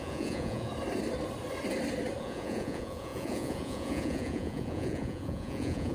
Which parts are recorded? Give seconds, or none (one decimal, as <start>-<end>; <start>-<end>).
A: 0.7-2.2